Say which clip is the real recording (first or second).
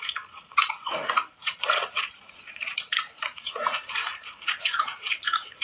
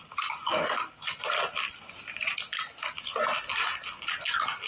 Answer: second